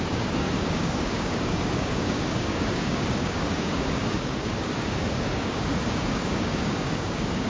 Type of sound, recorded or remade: remade